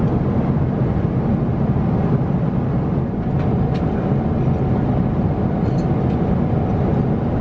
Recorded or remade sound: recorded